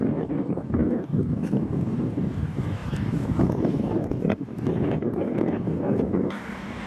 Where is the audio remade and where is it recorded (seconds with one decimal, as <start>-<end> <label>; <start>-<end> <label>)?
0.0-6.9 remade